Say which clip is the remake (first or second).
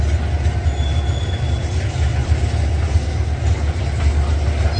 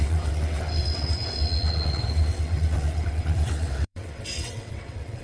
second